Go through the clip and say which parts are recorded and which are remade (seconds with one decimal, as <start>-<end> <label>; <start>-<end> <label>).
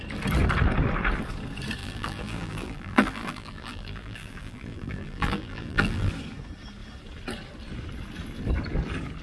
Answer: 0.0-1.8 recorded; 1.8-6.1 remade; 6.1-9.2 recorded